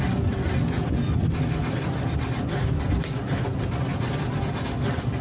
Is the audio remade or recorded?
recorded